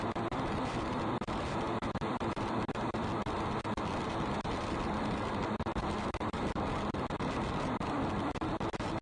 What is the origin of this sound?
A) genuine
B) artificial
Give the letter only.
A